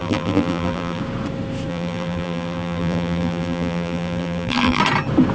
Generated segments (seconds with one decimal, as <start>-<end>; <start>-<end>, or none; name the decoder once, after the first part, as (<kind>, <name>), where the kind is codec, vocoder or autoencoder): 0.0-1.0 (vocoder, BigVGAN v2); 1.7-4.8